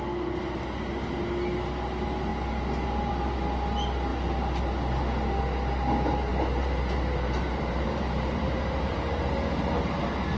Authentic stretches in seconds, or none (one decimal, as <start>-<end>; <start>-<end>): 0.0-6.3; 9.2-10.4